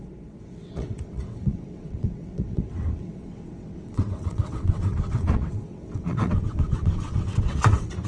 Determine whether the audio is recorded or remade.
remade